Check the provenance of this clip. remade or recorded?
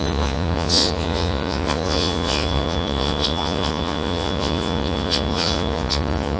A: remade